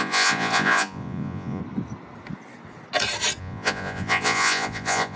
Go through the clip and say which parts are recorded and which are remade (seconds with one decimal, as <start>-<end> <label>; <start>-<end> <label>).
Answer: 0.0-1.6 remade; 1.6-3.4 recorded; 3.4-5.2 remade